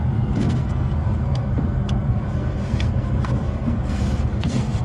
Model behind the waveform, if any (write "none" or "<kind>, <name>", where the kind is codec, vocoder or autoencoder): codec, SNAC